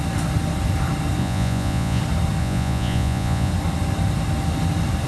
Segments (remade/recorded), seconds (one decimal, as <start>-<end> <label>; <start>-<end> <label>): 0.0-1.2 recorded; 1.2-2.0 remade; 2.0-2.4 recorded; 2.4-3.5 remade; 3.5-5.1 recorded